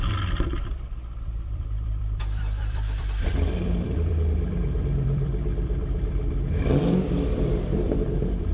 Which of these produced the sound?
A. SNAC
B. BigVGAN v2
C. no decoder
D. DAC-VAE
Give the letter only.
B